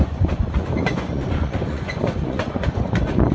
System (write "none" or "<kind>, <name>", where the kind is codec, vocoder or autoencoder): vocoder, Vocos